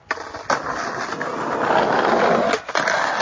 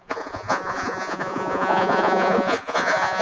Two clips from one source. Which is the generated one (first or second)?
second